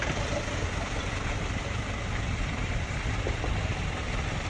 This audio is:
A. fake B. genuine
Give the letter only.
B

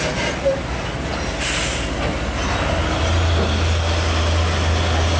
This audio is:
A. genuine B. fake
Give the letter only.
A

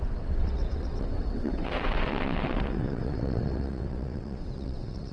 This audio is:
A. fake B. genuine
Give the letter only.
A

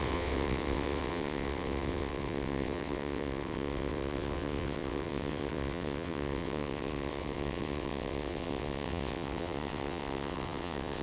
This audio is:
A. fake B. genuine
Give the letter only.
A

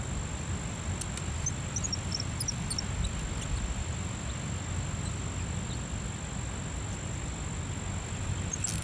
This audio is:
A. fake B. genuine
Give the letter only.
B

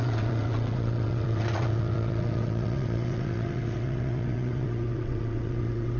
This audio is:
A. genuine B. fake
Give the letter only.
B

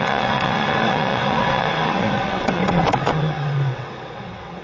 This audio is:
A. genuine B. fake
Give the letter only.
B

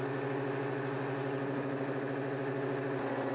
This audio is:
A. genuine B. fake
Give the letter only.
A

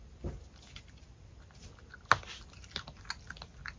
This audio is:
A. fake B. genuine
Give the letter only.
B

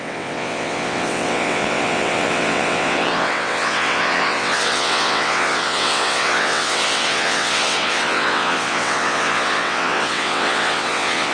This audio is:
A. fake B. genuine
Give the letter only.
A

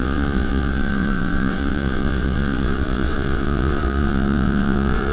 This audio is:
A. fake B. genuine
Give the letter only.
A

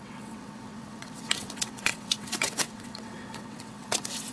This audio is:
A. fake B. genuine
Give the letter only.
A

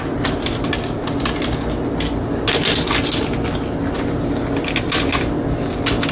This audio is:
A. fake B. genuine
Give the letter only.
B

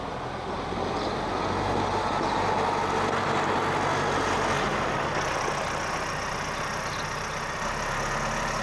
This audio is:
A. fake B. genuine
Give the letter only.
B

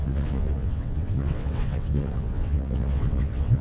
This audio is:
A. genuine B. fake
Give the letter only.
B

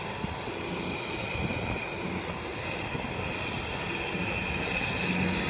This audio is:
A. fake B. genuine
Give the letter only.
B